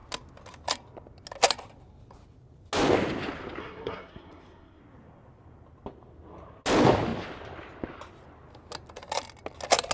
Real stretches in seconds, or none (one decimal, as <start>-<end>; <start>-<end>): 0.0-3.6; 4.8-9.9